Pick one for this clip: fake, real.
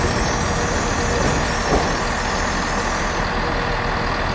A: real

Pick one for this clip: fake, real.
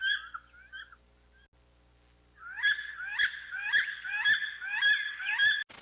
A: real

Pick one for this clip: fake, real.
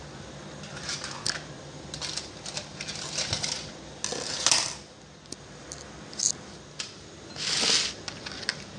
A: real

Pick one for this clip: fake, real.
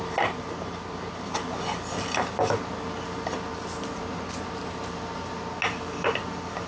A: real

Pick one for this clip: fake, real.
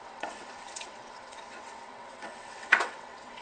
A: fake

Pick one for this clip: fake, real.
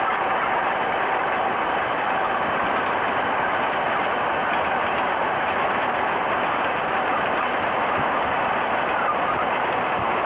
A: real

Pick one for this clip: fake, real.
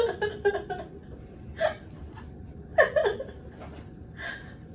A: real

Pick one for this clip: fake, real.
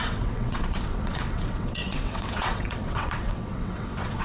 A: fake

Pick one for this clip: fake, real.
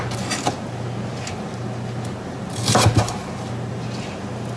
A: real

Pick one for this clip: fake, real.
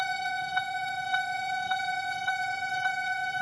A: fake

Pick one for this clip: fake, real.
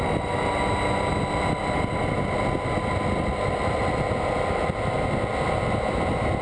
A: real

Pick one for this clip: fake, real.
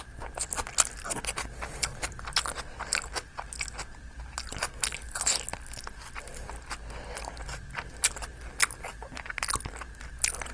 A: real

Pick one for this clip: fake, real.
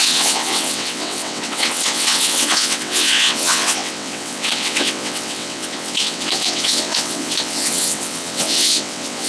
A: fake